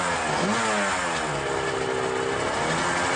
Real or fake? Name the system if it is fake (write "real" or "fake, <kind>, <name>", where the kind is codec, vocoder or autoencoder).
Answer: real